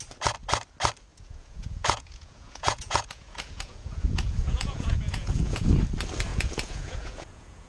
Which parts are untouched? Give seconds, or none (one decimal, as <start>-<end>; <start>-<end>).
0.0-1.1; 5.7-6.3